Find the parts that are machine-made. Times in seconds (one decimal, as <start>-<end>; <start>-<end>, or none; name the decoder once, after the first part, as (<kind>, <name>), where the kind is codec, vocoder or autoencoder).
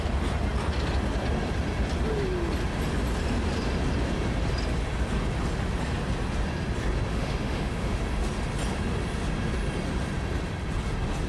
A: 7.1-8.0 (autoencoder, DAC-VAE)